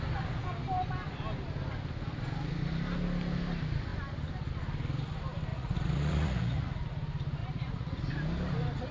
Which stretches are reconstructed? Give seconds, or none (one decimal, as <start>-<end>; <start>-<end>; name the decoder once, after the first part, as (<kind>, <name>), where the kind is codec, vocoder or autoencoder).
5.5-6.7 (vocoder, Vocos); 7.4-8.1